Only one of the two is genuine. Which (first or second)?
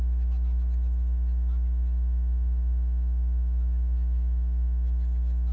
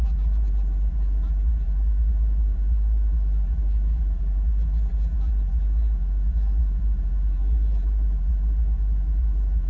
first